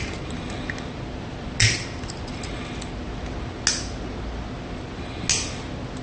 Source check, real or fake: real